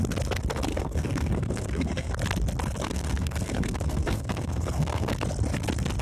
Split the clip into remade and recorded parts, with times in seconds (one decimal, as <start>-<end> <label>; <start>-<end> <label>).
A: 0.0-0.7 recorded; 0.7-2.1 remade; 2.1-2.8 recorded; 2.8-5.1 remade; 5.1-6.0 recorded